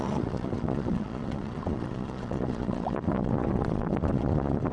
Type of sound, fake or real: fake